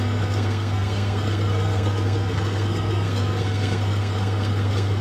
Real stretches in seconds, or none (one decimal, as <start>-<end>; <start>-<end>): none